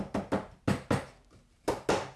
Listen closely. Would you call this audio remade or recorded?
recorded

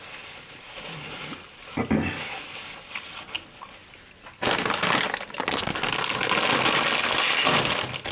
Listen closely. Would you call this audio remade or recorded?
recorded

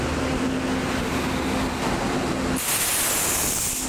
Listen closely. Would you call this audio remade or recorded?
recorded